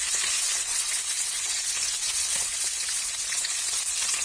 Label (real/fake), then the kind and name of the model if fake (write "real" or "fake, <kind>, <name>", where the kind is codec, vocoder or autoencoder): fake, vocoder, WaveNeXt